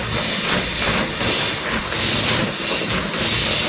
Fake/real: real